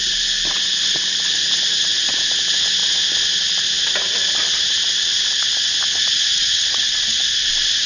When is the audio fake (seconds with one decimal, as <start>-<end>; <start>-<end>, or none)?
6.3-7.5